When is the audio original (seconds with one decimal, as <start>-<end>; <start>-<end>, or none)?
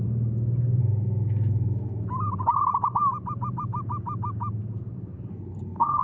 0.0-0.8; 2.0-5.3